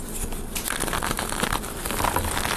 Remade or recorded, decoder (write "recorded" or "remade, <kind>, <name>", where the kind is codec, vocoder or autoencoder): recorded